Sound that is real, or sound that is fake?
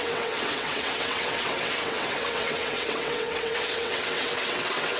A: fake